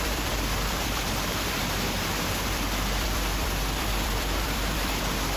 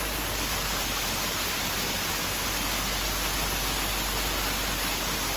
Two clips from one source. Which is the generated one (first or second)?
first